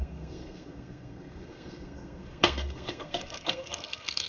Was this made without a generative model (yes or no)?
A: no